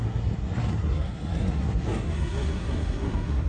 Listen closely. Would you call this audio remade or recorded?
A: remade